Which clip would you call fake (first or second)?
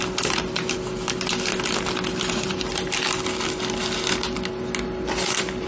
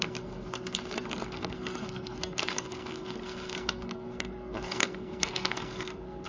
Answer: second